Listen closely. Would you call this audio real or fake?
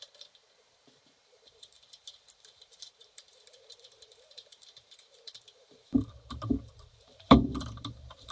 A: fake